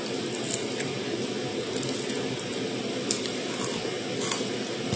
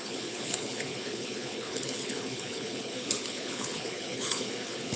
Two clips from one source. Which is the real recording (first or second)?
first